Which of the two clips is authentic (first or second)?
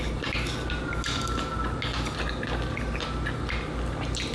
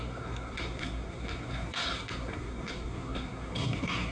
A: first